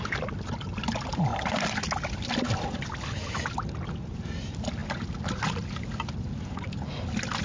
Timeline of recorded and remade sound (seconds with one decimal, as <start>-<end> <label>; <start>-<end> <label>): 0.0-7.4 recorded